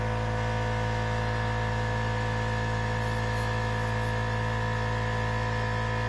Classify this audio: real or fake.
real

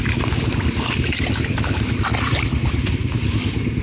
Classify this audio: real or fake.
real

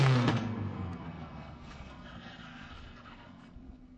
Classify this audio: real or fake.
fake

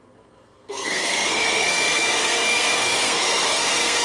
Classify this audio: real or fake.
fake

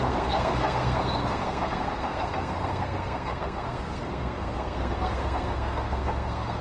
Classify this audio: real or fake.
fake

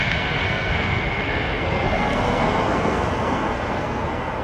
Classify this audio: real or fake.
fake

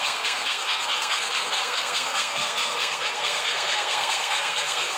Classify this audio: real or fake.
fake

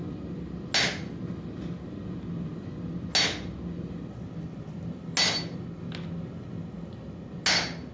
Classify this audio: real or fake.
real